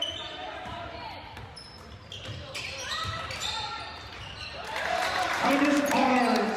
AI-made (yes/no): yes